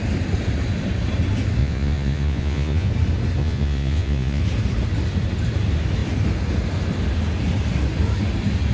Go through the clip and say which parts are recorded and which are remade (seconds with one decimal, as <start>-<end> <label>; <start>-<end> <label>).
0.0-1.6 recorded; 1.6-2.9 remade; 2.9-3.4 recorded; 3.4-4.4 remade; 4.4-8.7 recorded

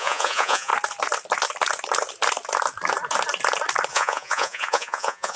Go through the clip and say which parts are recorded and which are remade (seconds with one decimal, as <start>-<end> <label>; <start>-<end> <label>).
0.0-0.7 remade; 0.7-3.9 recorded; 3.9-5.4 remade

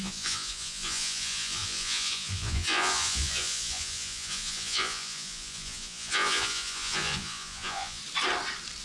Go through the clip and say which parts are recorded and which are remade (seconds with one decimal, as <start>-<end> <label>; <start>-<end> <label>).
0.0-8.0 remade; 8.0-8.8 recorded

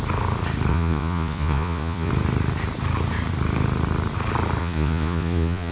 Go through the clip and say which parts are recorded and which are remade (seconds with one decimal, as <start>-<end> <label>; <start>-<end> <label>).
0.0-0.7 recorded; 0.7-2.1 remade; 2.1-4.6 recorded; 4.6-5.7 remade

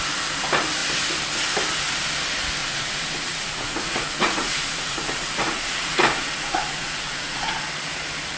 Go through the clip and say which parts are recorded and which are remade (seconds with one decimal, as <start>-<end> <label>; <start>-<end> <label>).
0.0-2.6 recorded; 2.6-7.6 remade; 7.6-8.4 recorded

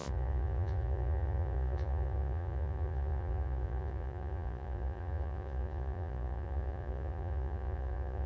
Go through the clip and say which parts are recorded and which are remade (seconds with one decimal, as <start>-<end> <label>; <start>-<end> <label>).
0.0-8.3 remade